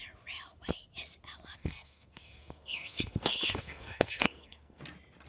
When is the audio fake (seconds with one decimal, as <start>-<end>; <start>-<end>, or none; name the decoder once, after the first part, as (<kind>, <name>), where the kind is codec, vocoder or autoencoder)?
1.6-4.8 (codec, SNAC)